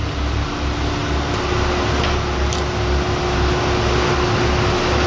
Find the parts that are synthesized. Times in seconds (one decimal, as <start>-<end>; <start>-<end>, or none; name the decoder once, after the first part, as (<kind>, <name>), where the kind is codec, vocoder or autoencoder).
none